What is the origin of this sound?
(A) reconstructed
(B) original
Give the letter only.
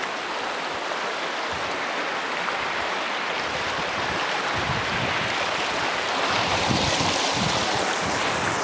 B